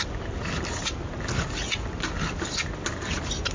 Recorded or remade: recorded